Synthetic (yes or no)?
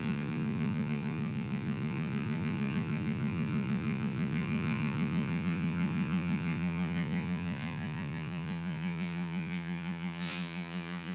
yes